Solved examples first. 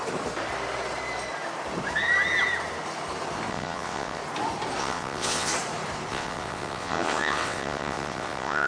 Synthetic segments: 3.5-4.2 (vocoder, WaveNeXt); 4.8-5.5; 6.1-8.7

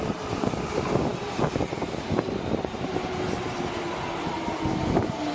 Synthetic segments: none